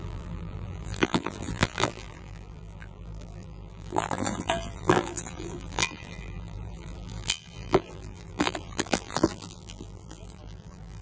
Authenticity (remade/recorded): remade